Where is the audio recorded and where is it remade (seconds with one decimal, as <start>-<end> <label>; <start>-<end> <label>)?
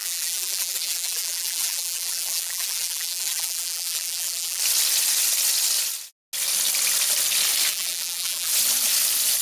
0.0-4.6 remade; 4.6-7.7 recorded; 7.7-8.5 remade; 8.5-9.4 recorded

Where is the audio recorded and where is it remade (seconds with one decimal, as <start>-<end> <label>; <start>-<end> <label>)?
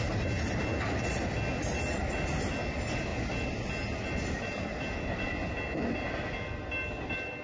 0.0-7.4 recorded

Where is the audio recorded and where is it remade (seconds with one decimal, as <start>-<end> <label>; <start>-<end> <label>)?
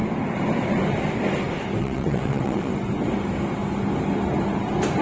0.0-1.8 recorded; 1.8-2.7 remade; 2.7-5.0 recorded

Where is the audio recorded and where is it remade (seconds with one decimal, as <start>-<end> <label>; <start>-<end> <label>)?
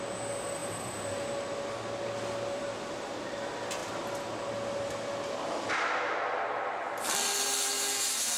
0.0-8.4 recorded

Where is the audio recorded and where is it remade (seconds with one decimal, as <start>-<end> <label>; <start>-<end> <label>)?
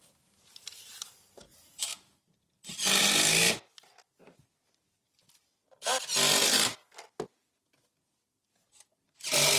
0.0-9.6 recorded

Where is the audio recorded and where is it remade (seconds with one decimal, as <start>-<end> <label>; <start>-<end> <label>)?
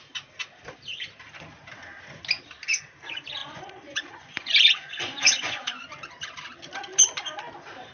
0.0-3.4 recorded; 3.4-5.9 remade; 5.9-7.9 recorded